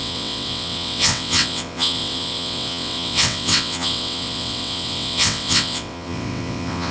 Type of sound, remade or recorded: remade